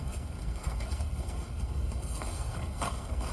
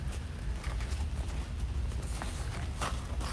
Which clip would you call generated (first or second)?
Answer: first